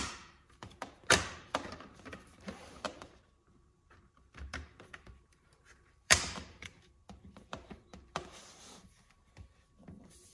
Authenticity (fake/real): fake